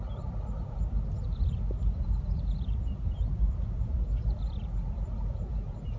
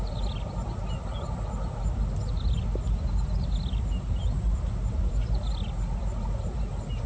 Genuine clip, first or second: second